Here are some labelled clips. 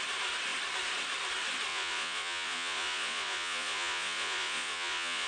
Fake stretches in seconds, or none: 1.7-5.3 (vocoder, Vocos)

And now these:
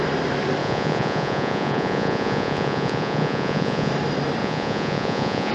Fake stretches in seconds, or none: 0.6-3.9 (vocoder, Vocos); 4.4-5.5

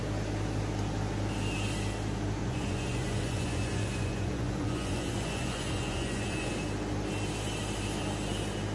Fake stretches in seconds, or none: 2.4-6.5 (vocoder, Vocos)

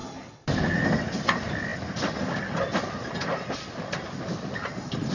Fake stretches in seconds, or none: none

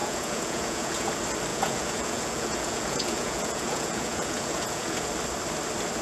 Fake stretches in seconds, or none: 0.0-1.1 (vocoder, Vocos); 1.5-5.1

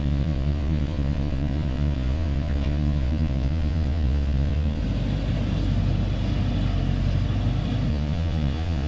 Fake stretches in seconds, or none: 0.0-4.8 (vocoder, Vocos); 7.9-8.9

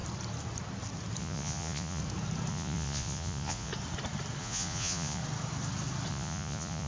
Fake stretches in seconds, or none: 1.2-2.0 (vocoder, Vocos); 2.5-3.7; 4.4-5.2; 6.1-6.9

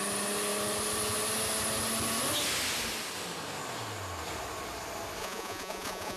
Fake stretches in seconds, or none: 5.2-6.2 (vocoder, Vocos)